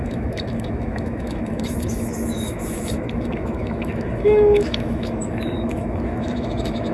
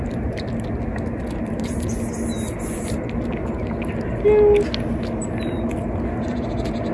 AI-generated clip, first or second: first